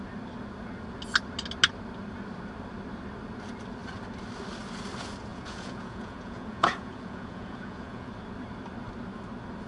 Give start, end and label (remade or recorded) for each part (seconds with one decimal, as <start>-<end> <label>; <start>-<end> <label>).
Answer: 0.0-5.3 recorded; 5.3-8.1 remade; 8.1-9.7 recorded